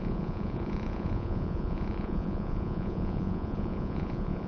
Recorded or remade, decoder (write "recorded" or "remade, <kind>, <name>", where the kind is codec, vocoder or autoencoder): remade, vocoder, Vocos